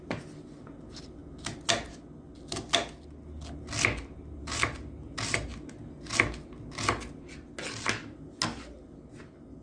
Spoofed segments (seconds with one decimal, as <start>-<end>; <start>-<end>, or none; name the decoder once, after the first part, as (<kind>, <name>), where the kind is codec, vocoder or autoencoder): none